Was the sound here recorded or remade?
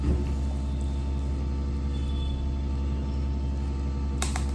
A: recorded